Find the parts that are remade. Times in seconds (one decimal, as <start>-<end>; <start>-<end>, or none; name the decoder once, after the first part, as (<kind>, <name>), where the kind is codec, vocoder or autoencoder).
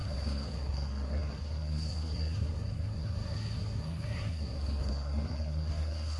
0.0-6.2 (codec, SNAC)